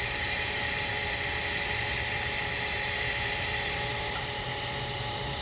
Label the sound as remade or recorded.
remade